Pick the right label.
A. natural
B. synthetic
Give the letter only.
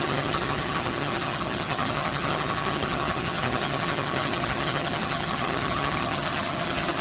B